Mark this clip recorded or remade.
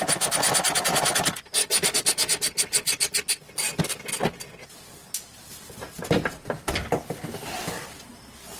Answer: recorded